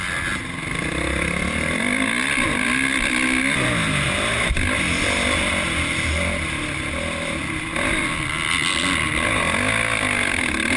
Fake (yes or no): no